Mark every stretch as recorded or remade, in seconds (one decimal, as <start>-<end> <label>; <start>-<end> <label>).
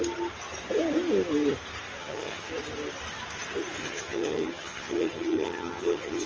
0.0-2.0 recorded; 2.0-2.5 remade; 2.5-3.8 recorded; 3.8-6.3 remade